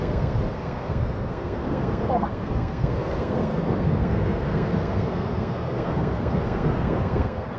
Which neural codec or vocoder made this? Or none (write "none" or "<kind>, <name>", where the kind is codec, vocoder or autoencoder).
codec, SNAC